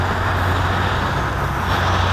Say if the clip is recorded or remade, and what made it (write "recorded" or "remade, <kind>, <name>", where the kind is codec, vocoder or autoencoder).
recorded